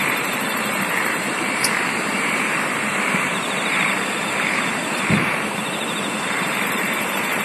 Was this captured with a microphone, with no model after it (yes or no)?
no